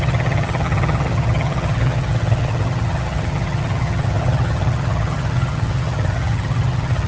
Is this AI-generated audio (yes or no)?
yes